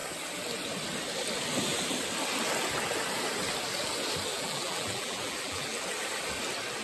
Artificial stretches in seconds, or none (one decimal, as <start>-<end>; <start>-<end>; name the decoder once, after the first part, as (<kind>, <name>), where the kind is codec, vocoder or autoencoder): 4.3-5.8 (vocoder, BigVGAN v2)